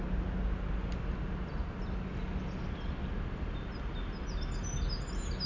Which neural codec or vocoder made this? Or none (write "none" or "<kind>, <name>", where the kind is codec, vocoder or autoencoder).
none